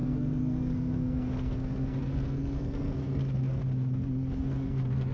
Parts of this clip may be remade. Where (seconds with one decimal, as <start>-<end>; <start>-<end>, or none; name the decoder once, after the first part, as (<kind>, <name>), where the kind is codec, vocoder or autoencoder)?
0.0-3.6 (codec, SNAC); 4.4-5.1